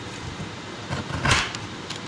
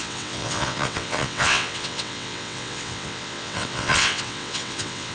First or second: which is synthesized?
second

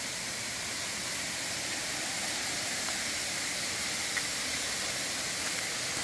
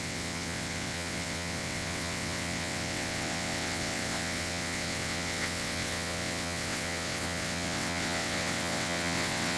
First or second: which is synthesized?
second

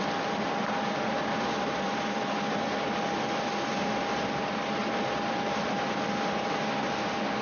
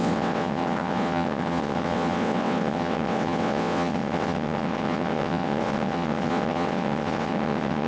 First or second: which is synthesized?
second